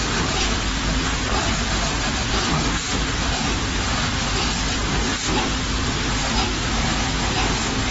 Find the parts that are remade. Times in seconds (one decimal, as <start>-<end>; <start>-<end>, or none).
none